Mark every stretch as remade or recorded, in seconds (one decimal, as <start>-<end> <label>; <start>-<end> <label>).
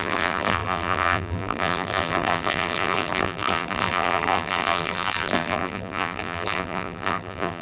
0.0-7.6 remade